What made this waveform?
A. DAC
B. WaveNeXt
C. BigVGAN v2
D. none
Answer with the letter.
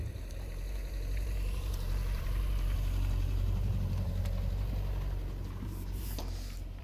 C